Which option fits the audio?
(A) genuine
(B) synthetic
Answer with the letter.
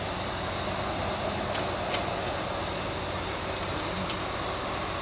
A